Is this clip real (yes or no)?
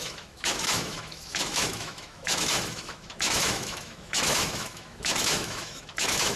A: no